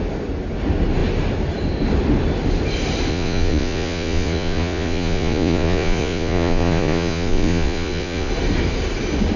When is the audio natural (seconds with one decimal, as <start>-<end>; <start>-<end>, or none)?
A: 0.0-3.1; 8.3-9.4

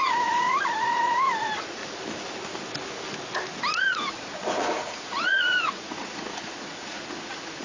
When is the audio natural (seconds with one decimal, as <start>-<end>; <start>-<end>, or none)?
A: 1.8-3.8

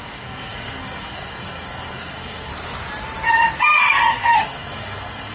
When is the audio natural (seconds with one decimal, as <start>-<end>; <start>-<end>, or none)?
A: 2.5-3.9

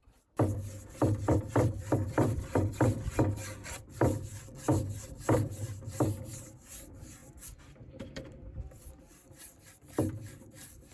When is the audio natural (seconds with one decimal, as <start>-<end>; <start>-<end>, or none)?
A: none

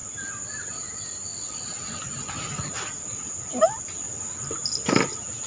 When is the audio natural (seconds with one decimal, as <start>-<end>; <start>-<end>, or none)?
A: 0.0-5.5

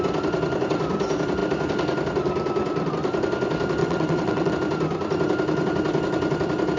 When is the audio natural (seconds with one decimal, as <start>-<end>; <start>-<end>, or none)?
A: 0.0-3.8; 4.5-6.8

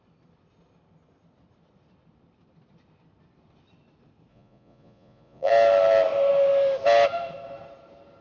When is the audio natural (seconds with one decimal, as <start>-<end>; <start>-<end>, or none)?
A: 0.0-4.3; 5.5-8.2

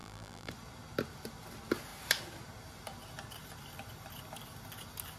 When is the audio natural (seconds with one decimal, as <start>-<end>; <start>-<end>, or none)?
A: 0.5-5.2